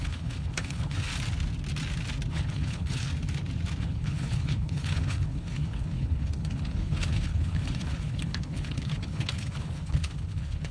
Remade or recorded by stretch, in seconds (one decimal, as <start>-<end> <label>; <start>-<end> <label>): 0.0-1.1 remade; 1.1-2.3 recorded; 2.3-3.1 remade; 3.1-3.8 recorded; 3.8-10.7 remade